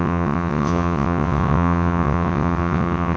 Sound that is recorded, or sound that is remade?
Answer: remade